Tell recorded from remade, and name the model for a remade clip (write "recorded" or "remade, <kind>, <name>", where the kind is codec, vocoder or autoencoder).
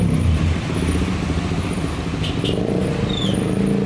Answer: recorded